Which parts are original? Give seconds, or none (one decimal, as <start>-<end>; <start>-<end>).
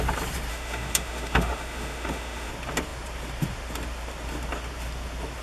0.0-0.5; 2.5-5.4